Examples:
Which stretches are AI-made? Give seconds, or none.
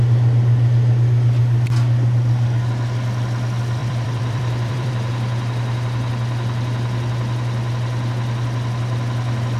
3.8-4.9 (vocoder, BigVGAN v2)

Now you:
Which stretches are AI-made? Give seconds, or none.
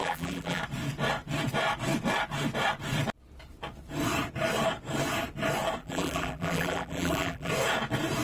0.0-0.6 (vocoder, BigVGAN v2); 5.8-7.5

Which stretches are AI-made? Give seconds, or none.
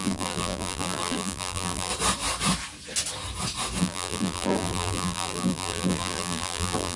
0.0-1.9 (vocoder, BigVGAN v2); 3.8-7.0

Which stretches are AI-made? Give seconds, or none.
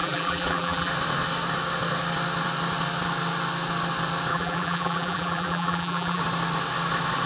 0.0-0.9 (vocoder, BigVGAN v2); 4.3-6.2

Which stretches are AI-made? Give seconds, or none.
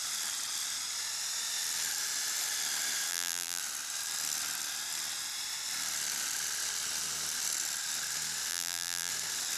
3.1-3.6 (vocoder, BigVGAN v2); 8.5-9.1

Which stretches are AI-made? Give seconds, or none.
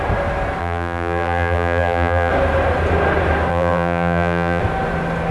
0.6-2.3 (vocoder, BigVGAN v2); 3.5-4.6